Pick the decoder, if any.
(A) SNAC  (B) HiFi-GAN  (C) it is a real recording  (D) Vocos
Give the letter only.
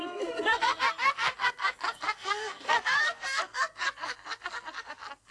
A